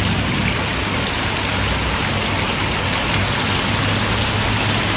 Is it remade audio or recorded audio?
recorded